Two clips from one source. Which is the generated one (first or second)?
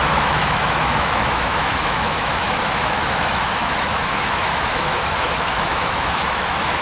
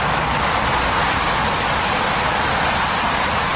first